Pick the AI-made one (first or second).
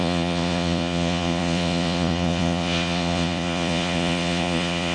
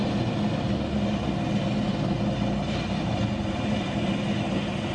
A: first